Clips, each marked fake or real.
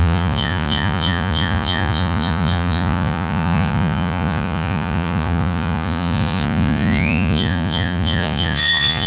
fake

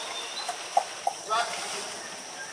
real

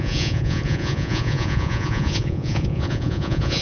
fake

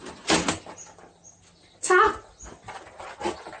real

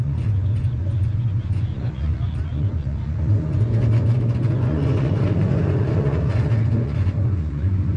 fake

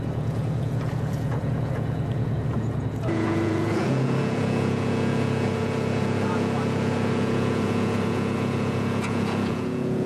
fake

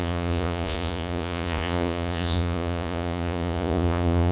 fake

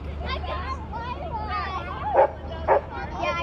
real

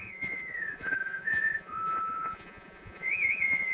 fake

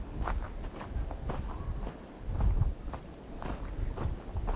real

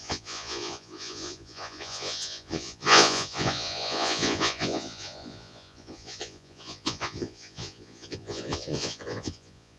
fake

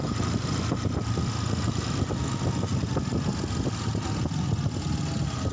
real